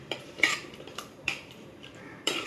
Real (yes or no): no